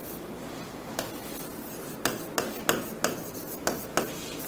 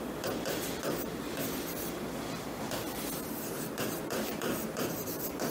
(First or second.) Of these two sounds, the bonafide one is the first